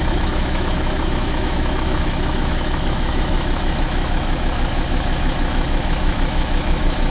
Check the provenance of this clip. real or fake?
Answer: fake